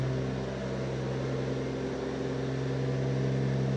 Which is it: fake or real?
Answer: real